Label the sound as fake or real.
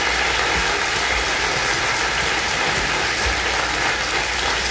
real